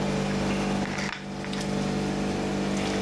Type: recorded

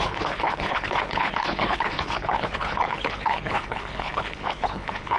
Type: remade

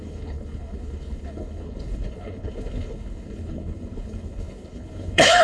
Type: remade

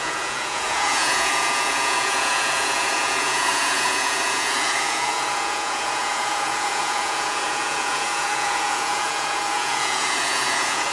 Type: remade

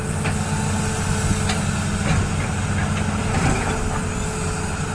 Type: recorded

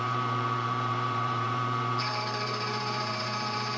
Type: remade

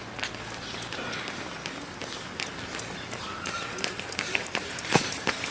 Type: recorded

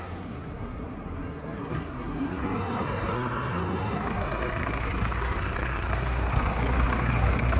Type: remade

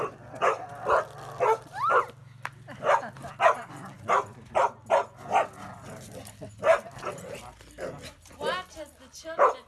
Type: recorded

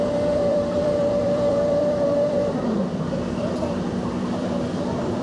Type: remade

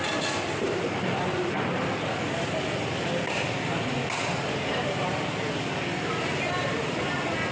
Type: recorded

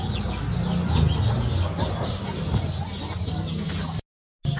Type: recorded